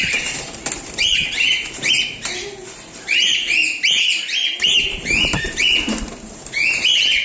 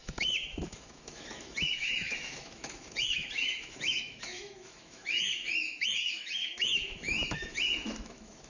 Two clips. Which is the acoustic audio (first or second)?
first